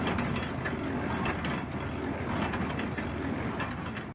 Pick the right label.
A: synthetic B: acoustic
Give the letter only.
B